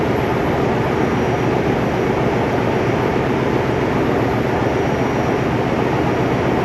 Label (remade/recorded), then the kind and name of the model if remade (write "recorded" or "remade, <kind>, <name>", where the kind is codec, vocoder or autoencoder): recorded